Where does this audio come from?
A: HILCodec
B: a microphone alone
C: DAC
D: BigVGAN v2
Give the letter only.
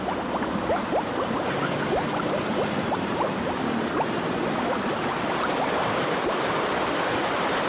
B